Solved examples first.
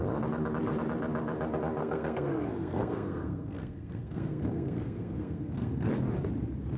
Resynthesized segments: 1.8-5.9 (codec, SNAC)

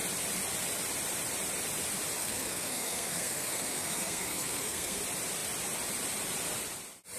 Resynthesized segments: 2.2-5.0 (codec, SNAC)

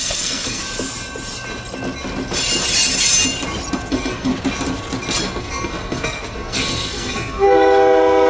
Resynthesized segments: 0.0-0.6 (codec, SNAC); 3.9-4.3; 5.4-8.3

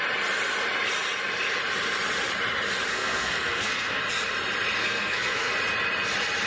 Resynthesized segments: 2.9-4.0 (codec, SNAC); 4.8-5.5

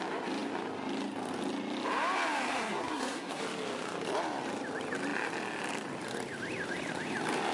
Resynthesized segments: 2.5-3.4 (codec, SNAC)